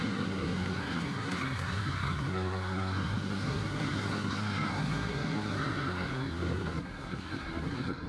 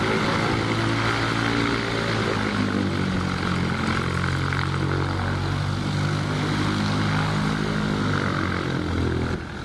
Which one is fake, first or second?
first